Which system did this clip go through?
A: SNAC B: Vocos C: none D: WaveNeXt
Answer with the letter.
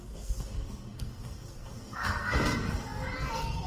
A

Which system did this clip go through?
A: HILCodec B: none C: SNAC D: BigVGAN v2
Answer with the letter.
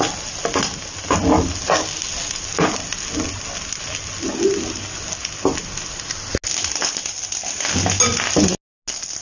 B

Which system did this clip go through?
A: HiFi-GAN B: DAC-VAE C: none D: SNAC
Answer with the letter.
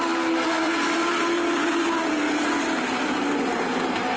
C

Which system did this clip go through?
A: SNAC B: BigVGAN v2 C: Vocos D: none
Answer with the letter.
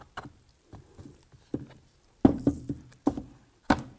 D